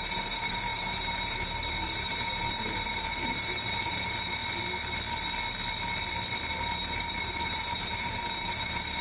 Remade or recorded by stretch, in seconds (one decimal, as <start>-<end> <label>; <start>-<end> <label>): 0.0-4.4 remade; 4.4-6.5 recorded; 6.5-9.0 remade

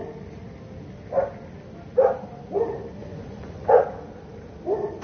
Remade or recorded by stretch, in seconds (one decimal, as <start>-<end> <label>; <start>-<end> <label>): 0.0-3.0 recorded; 3.0-3.7 remade; 3.7-5.0 recorded

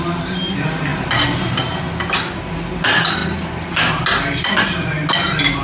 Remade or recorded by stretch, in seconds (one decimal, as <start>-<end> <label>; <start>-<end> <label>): 0.0-5.6 recorded

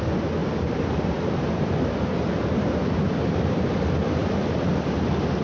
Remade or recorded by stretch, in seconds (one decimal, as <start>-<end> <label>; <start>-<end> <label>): 0.0-0.4 recorded; 0.4-3.6 remade; 3.6-4.2 recorded; 4.2-4.7 remade; 4.7-5.4 recorded

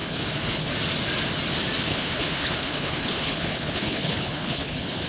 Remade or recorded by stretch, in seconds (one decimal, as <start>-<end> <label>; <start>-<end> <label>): 0.0-0.7 remade; 0.7-1.9 recorded; 1.9-5.1 remade